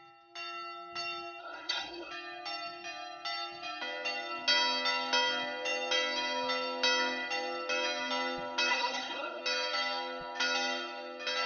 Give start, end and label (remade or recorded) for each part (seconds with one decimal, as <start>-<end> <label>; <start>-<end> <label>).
0.0-1.4 recorded; 1.4-2.1 remade; 2.1-8.7 recorded; 8.7-9.4 remade; 9.4-11.5 recorded